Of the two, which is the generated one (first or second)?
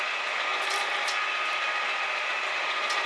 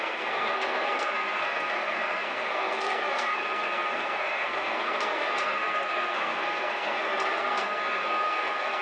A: second